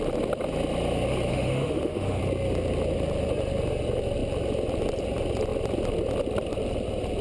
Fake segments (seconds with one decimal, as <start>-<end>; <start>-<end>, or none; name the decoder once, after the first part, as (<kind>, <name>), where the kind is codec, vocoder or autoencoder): 1.3-2.2 (autoencoder, DAC-VAE)